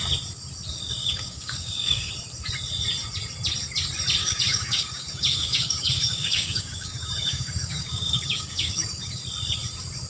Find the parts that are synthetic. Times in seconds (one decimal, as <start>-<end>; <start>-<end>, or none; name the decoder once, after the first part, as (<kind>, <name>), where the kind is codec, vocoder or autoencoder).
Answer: 1.0-2.1 (codec, DAC); 4.2-9.2